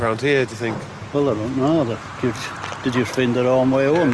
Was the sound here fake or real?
real